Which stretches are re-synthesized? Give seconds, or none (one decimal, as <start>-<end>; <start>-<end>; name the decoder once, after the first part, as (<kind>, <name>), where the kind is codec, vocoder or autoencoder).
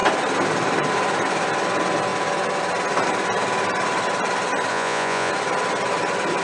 4.7-5.3 (vocoder, Vocos)